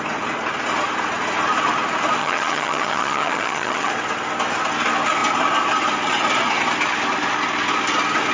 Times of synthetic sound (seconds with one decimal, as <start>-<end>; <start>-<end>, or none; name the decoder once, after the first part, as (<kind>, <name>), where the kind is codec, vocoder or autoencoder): 2.2-3.9 (vocoder, HiFi-GAN)